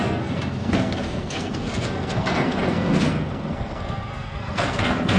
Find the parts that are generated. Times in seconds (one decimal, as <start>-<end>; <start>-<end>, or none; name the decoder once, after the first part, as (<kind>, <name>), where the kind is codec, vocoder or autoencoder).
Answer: 0.0-5.2 (codec, SNAC)